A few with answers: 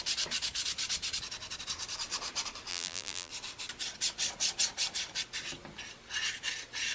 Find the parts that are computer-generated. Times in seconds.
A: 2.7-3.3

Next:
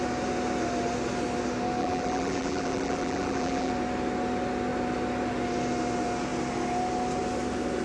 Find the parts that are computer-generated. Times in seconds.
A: 1.8-3.7

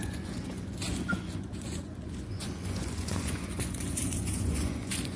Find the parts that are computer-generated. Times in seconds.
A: 0.0-5.2

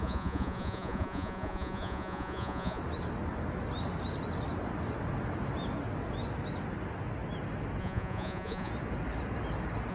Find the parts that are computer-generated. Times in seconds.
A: 0.0-2.8; 7.8-8.7

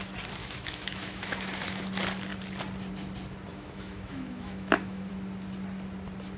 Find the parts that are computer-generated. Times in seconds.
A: 0.4-1.8; 3.5-5.1